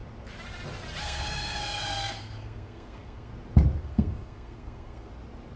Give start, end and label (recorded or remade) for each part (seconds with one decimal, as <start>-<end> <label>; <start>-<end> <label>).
0.0-1.0 recorded; 1.0-3.3 remade; 3.3-3.8 recorded; 3.8-5.1 remade; 5.1-5.6 recorded